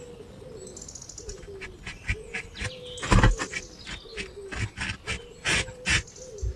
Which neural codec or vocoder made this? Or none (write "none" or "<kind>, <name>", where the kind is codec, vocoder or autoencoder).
none